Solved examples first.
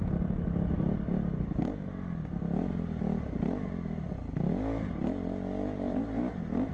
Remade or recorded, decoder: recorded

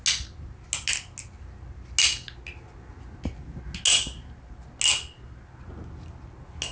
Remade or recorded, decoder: recorded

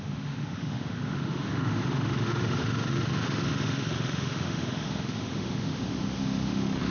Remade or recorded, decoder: remade, autoencoder, DAC-VAE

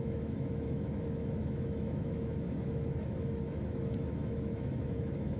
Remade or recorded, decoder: remade, autoencoder, DAC-VAE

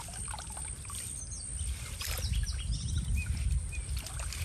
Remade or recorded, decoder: recorded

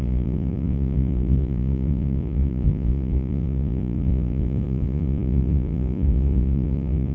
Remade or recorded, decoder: remade, vocoder, Vocos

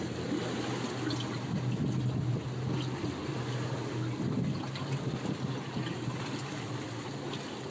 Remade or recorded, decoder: recorded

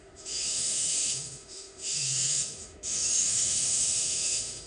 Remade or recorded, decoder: remade, autoencoder, DAC-VAE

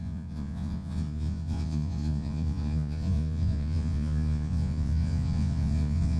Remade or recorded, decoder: remade, vocoder, Vocos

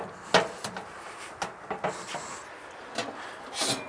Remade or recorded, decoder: recorded